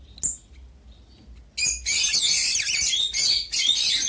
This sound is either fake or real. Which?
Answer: real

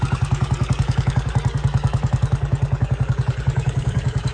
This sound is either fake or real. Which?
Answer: fake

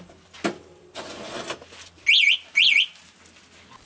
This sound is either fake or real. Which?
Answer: real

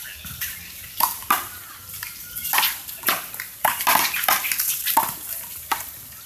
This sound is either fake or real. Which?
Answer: real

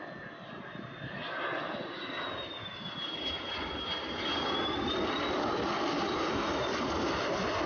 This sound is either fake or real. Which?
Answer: real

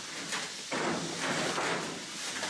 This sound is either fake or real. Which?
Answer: real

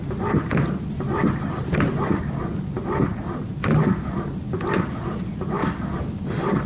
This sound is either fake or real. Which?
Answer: real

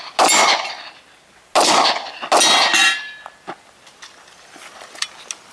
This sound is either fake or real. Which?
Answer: real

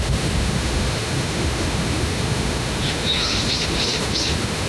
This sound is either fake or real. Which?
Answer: fake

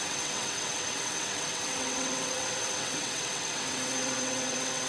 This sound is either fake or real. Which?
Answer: fake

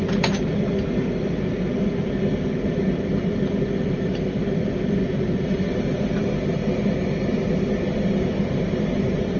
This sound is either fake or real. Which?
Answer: real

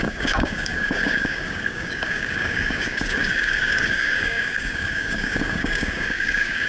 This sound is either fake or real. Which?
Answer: fake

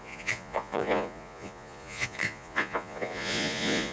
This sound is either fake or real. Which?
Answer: fake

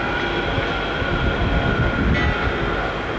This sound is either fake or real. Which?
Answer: real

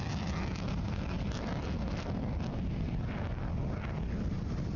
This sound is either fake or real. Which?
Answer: real